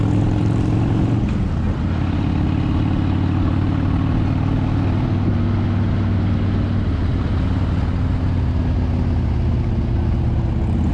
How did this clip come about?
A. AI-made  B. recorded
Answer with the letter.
B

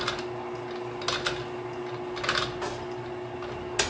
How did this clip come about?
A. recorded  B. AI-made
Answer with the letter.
A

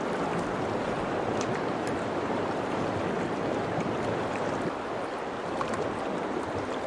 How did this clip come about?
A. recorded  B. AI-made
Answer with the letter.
A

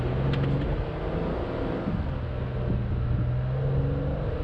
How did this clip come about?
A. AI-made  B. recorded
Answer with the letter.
B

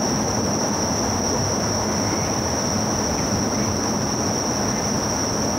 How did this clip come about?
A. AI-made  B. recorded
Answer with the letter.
B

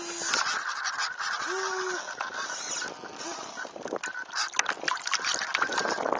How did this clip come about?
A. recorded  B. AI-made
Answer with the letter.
A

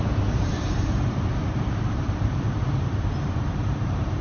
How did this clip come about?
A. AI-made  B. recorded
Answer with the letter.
A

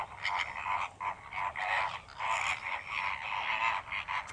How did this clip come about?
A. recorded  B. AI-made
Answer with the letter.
A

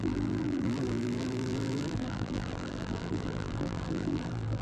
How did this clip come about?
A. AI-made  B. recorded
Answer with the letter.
A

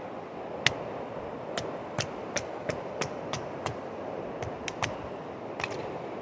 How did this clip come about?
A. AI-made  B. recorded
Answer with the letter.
B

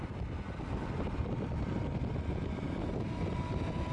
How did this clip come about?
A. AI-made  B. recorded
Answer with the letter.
B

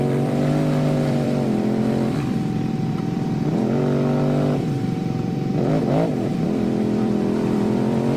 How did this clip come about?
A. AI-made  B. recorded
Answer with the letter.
A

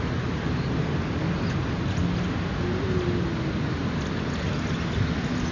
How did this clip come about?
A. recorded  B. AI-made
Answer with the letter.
A